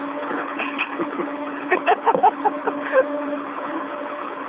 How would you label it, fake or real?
fake